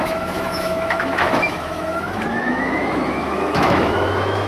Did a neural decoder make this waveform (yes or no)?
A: yes